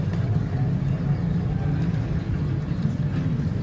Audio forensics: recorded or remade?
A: recorded